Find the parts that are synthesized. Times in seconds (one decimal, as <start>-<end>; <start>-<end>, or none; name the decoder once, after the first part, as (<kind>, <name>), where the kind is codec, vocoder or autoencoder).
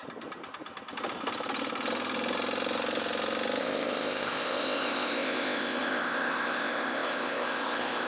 3.6-8.1 (codec, ZipCodec)